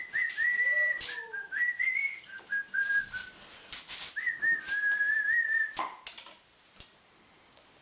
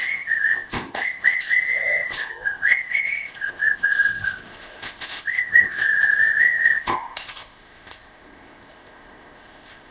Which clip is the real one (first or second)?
first